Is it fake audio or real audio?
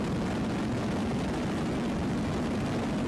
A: real